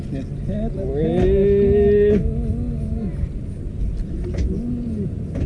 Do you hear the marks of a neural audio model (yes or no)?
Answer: no